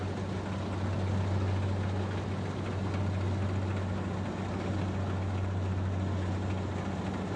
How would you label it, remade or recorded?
recorded